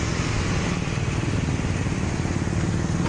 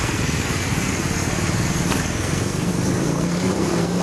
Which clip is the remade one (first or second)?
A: second